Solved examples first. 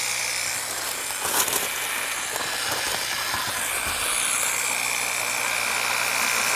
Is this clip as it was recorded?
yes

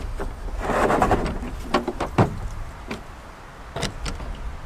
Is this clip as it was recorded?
yes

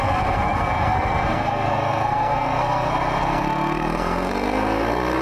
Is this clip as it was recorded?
no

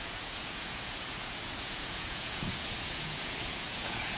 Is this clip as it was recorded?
no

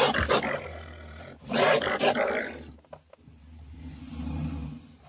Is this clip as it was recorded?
yes